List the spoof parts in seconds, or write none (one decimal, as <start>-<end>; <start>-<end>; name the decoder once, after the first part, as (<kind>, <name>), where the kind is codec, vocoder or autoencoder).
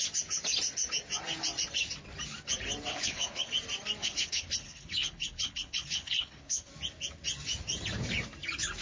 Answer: 2.9-3.5 (codec, HILCodec); 4.0-6.7